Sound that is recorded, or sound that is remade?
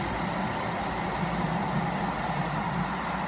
recorded